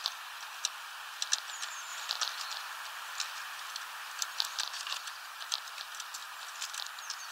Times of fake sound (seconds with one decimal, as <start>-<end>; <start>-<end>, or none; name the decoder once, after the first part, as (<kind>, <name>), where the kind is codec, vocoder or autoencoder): none